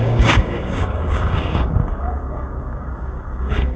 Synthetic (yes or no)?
yes